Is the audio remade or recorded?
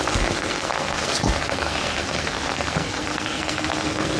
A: remade